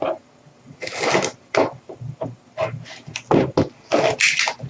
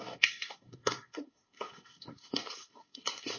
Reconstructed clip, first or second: second